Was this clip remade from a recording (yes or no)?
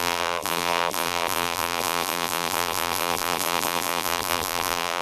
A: yes